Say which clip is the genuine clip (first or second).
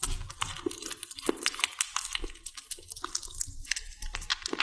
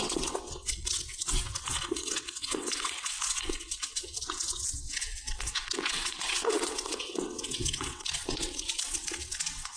first